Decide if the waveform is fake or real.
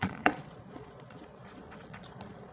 fake